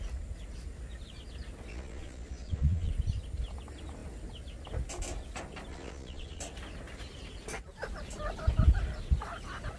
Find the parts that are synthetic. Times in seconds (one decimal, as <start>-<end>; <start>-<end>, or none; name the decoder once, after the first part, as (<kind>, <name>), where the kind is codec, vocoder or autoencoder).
1.7-2.9 (vocoder, Vocos); 5.7-6.4